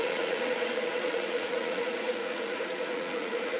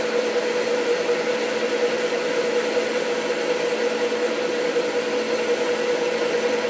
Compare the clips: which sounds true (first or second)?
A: second